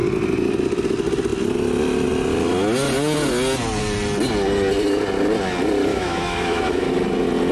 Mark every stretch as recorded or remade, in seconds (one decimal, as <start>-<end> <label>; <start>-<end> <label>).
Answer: 0.0-5.9 recorded; 5.9-6.9 remade; 6.9-7.5 recorded